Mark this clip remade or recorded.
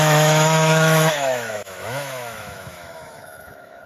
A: remade